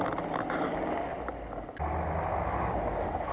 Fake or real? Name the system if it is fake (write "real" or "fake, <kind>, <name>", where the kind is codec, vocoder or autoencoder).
real